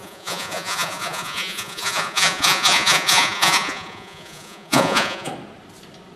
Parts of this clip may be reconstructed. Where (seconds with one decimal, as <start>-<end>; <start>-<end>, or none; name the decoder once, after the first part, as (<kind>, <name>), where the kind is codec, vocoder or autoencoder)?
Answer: 0.0-5.3 (vocoder, Vocos)